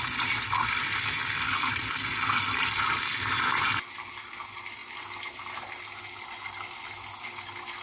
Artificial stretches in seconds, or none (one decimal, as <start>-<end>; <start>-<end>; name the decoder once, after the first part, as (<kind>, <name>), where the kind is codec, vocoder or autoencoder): none